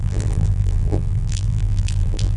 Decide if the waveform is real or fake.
fake